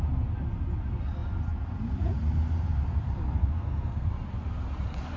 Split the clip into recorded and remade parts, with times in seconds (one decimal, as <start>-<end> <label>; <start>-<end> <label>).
0.0-3.4 recorded; 3.4-4.1 remade; 4.1-5.2 recorded